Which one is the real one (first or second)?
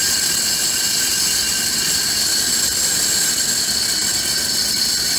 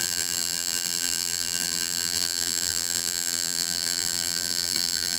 first